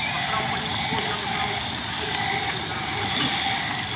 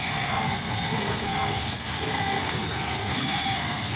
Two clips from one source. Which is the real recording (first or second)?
first